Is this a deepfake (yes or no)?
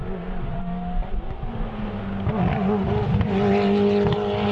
no